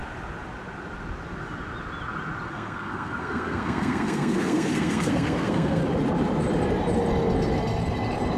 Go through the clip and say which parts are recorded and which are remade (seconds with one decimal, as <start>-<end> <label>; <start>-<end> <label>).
0.0-2.5 recorded; 2.5-5.8 remade; 5.8-8.4 recorded